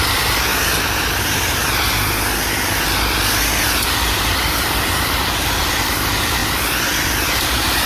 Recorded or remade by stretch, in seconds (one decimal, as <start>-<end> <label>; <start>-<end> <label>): 0.0-0.5 remade; 0.5-1.2 recorded; 1.2-1.6 remade; 1.6-3.6 recorded; 3.6-6.4 remade; 6.4-7.4 recorded; 7.4-7.9 remade